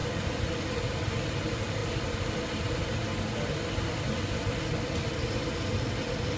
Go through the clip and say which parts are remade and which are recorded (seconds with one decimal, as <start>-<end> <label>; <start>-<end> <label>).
0.0-6.4 recorded